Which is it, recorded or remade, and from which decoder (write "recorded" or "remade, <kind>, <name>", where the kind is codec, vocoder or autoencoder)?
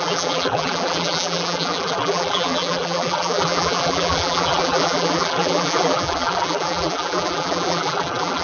remade, vocoder, BigVGAN v2